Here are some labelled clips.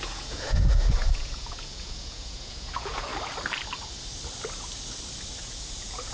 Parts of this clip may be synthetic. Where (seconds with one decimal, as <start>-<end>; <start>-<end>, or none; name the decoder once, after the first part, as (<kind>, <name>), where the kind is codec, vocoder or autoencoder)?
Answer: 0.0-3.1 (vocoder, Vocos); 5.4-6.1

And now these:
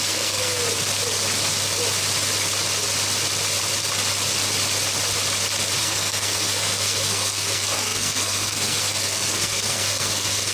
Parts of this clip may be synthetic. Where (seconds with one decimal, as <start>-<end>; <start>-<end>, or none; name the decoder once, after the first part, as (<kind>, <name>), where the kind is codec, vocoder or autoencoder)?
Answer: 0.0-0.6 (codec, SNAC); 5.8-10.5

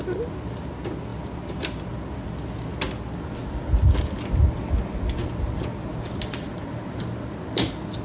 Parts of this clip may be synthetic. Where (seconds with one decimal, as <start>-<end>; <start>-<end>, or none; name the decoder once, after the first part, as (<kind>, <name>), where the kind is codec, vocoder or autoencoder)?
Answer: 1.1-1.9 (vocoder, BigVGAN v2)